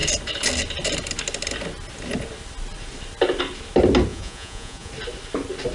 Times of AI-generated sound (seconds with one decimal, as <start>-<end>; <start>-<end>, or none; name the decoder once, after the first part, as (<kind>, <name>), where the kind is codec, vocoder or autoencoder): 4.1-4.9 (vocoder, Vocos)